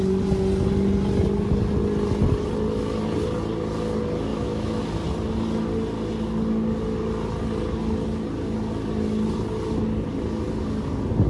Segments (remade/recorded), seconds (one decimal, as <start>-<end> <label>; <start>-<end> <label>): 0.0-4.3 recorded; 4.3-4.8 remade; 4.8-11.3 recorded